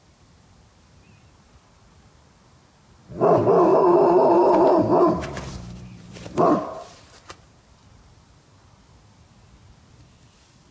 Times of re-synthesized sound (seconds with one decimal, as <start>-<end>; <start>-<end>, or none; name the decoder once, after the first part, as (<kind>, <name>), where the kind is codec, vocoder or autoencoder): 3.7-8.1 (vocoder, BigVGAN v2)